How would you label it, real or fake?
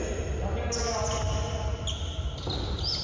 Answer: real